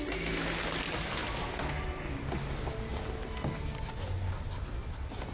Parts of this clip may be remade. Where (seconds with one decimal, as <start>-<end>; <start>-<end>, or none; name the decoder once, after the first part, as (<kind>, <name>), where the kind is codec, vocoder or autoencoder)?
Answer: none